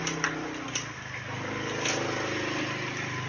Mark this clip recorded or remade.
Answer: recorded